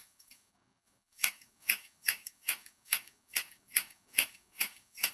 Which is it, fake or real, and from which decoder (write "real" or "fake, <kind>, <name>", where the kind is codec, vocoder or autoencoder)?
fake, codec, DAC